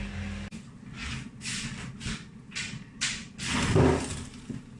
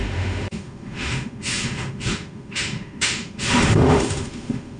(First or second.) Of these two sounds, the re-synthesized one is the second